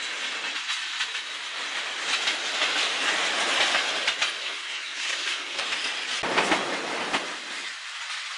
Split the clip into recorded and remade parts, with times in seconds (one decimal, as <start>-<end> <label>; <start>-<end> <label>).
0.0-4.4 recorded; 4.4-5.6 remade; 5.6-8.4 recorded